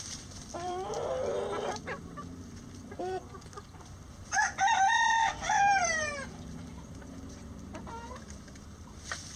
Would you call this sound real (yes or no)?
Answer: no